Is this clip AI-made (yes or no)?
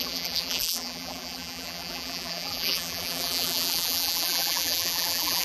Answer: yes